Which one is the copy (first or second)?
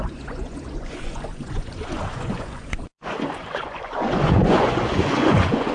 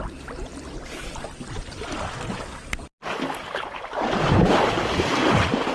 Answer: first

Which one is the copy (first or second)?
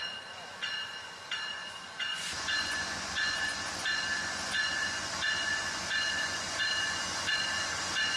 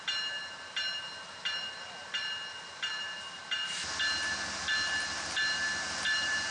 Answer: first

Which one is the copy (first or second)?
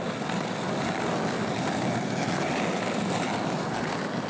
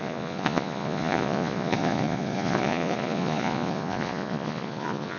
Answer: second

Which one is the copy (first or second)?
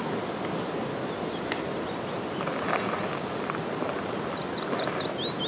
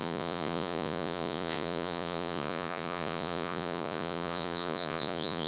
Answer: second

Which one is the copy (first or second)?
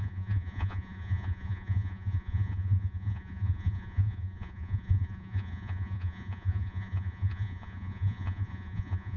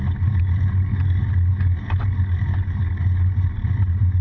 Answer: first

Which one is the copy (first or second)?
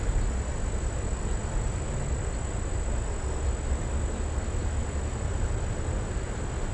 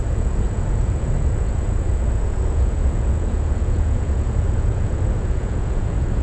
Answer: second